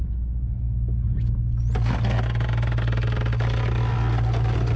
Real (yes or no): yes